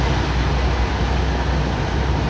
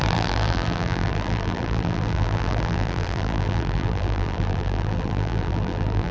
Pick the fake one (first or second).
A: second